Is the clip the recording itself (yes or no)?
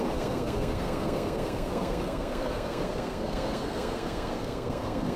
no